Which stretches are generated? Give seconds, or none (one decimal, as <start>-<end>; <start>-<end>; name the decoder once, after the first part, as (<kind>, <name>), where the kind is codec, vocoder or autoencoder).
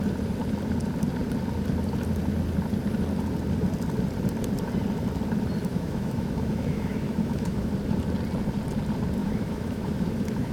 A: 5.7-7.7 (autoencoder, DAC-VAE); 9.2-10.5